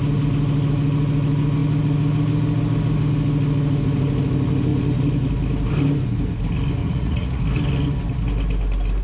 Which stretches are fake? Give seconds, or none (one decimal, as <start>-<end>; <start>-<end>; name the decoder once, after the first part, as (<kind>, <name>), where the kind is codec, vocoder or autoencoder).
6.8-7.4 (vocoder, Vocos)